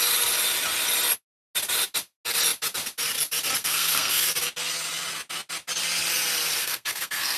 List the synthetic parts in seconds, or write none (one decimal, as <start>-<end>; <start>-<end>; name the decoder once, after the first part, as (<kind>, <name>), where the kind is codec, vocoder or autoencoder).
3.6-4.3 (codec, SNAC); 6.6-7.4